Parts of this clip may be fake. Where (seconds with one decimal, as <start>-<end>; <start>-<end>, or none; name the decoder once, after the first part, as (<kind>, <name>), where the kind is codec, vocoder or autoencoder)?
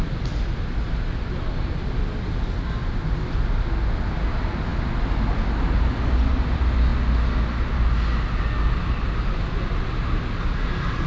none